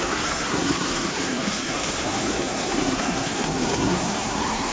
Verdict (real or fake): fake